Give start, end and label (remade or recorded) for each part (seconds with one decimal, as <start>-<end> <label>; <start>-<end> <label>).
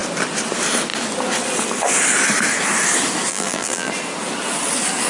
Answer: 0.0-3.3 recorded; 3.3-3.9 remade; 3.9-5.1 recorded